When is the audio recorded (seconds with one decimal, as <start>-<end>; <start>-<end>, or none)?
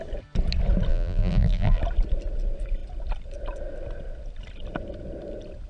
0.0-0.9; 1.8-5.7